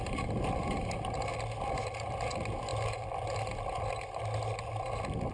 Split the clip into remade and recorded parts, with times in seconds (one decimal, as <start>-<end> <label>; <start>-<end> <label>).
0.0-5.3 recorded